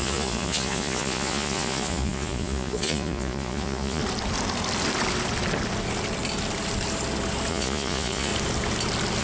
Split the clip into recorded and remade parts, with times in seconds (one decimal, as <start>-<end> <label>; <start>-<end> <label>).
0.0-4.0 remade; 4.0-7.5 recorded; 7.5-8.3 remade; 8.3-9.2 recorded